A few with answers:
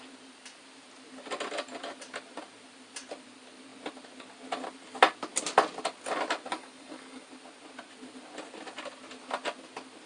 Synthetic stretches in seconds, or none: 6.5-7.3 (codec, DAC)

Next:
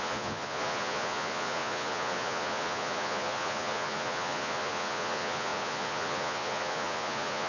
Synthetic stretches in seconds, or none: 0.0-7.5 (vocoder, Vocos)